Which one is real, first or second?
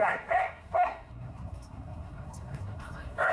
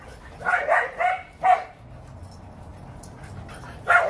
second